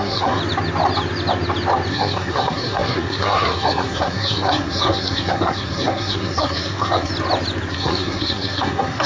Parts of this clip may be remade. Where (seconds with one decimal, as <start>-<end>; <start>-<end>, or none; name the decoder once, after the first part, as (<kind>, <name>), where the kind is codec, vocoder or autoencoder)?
0.0-0.4 (codec, SNAC); 1.9-7.1; 7.7-9.1